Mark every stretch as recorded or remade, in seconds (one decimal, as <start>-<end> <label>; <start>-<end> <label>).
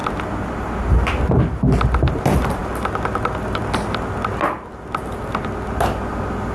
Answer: 0.0-6.5 recorded